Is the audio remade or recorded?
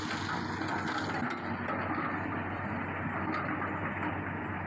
recorded